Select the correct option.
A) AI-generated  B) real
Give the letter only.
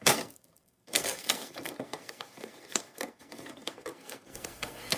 A